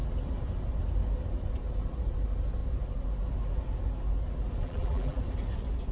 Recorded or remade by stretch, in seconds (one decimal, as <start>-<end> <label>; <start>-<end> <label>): 0.0-4.6 recorded; 4.6-5.2 remade; 5.2-5.9 recorded